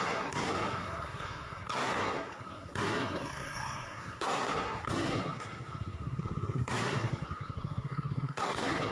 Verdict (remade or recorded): remade